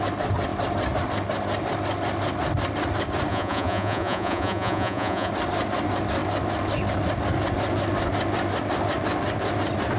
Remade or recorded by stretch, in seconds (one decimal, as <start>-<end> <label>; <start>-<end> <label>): 0.0-3.3 recorded; 3.3-5.3 remade; 5.3-10.0 recorded